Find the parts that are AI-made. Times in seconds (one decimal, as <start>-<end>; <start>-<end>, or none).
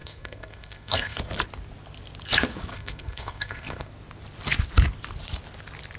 0.0-1.2; 2.7-3.9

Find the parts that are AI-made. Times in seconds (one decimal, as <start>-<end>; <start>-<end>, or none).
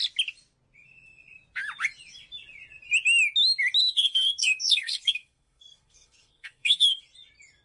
3.8-7.0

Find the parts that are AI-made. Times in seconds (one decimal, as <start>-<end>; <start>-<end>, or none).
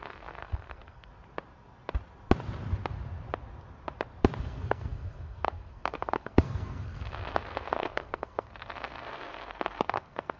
0.0-1.1; 4.4-10.4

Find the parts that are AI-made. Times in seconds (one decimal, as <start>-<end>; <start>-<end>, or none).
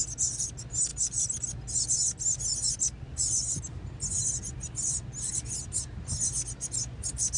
none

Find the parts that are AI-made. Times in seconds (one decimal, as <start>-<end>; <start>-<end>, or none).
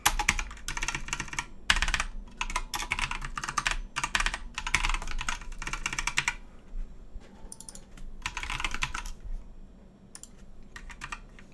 7.0-9.4